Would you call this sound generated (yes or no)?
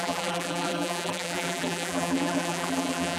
yes